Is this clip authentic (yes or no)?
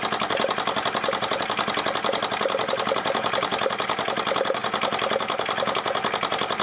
yes